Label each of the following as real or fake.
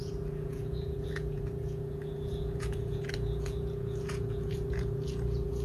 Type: fake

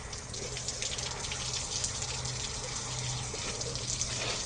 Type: real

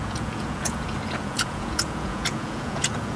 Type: fake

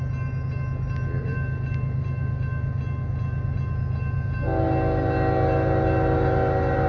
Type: real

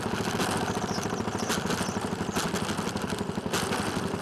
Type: real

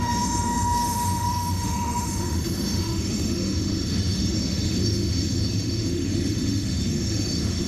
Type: fake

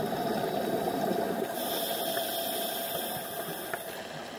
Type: real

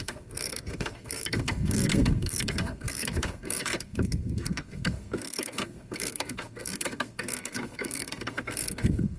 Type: fake